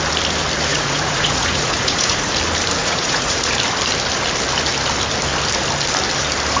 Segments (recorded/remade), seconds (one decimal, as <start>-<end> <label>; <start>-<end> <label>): 0.0-0.7 recorded; 0.7-2.4 remade; 2.4-2.8 recorded; 2.8-3.5 remade; 3.5-6.6 recorded